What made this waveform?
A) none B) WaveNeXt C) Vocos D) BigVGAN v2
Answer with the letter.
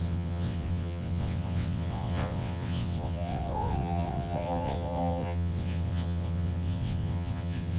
B